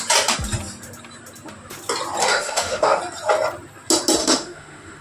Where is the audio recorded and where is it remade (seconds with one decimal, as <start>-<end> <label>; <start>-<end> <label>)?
0.0-2.2 recorded; 2.2-3.0 remade; 3.0-4.2 recorded; 4.2-5.0 remade